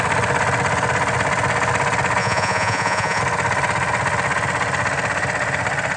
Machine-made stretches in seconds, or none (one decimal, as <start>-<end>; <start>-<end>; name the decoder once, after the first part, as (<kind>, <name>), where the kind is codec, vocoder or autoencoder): 2.2-3.2 (vocoder, Vocos)